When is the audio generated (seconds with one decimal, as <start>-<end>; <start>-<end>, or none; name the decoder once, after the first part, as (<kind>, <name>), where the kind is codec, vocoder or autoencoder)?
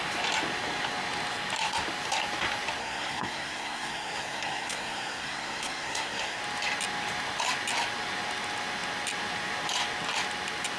2.8-6.4 (codec, SNAC)